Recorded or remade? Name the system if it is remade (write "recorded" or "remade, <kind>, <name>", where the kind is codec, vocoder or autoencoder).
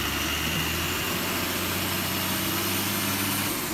recorded